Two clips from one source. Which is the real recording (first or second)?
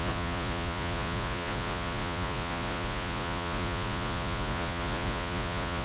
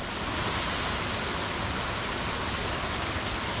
second